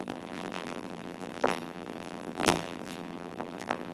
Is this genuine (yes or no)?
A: no